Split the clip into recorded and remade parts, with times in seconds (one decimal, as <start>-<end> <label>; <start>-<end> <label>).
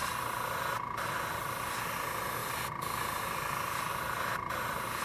0.0-5.0 recorded